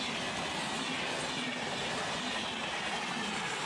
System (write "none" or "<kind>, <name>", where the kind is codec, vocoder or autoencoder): none